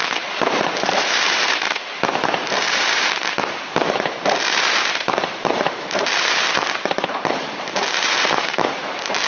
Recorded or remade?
remade